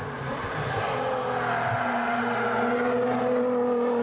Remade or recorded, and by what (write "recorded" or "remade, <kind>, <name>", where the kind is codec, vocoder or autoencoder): recorded